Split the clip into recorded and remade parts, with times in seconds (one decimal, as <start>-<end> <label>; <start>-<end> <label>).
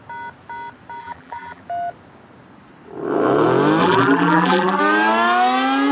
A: 0.0-1.0 recorded; 1.0-1.6 remade; 1.6-3.8 recorded; 3.8-4.8 remade; 4.8-5.9 recorded